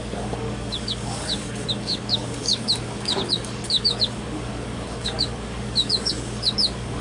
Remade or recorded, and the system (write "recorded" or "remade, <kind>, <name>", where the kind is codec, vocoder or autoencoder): remade, codec, DAC